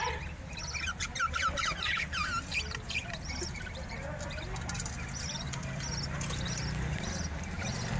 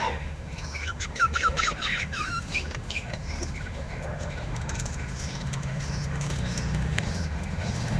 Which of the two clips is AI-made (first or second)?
second